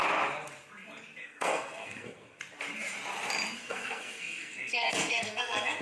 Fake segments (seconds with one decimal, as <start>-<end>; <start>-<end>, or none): 1.2-2.4; 3.6-5.8